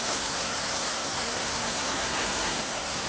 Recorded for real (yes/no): no